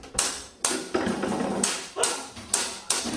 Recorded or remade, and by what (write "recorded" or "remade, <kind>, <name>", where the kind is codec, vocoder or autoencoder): recorded